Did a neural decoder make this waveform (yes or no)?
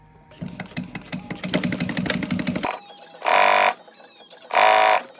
no